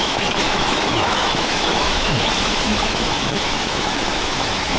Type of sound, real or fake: fake